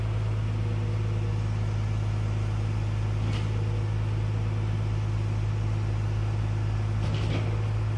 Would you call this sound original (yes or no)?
yes